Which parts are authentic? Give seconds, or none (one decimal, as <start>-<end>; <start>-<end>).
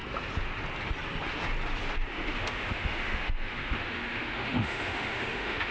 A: 0.0-2.1